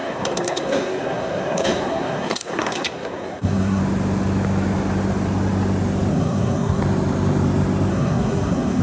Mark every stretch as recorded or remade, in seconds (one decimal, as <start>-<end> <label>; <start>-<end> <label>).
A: 0.0-3.8 remade; 3.8-6.1 recorded; 6.1-6.8 remade; 6.8-7.9 recorded; 7.9-8.8 remade